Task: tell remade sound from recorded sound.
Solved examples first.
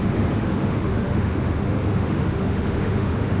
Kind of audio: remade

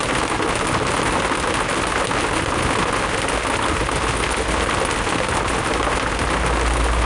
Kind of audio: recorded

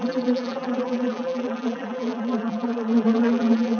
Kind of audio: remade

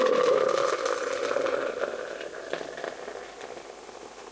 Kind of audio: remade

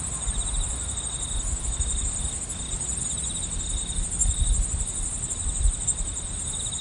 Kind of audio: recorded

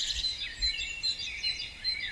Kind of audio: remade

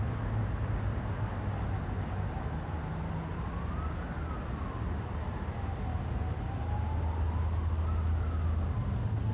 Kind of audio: recorded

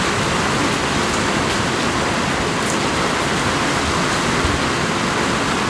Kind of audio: recorded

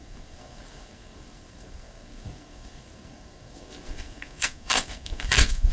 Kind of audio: remade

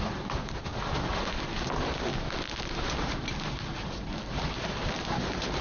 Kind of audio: recorded